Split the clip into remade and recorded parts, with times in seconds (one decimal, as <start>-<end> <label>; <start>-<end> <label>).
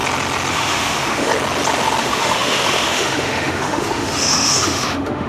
0.0-0.5 recorded; 0.5-1.3 remade; 1.3-2.0 recorded; 2.0-5.3 remade